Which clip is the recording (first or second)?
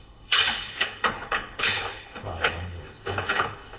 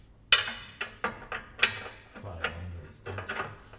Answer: second